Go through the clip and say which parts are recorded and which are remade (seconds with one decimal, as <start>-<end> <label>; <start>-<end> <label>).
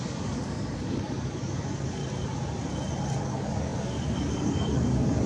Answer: 0.0-2.0 remade; 2.0-3.2 recorded; 3.2-5.3 remade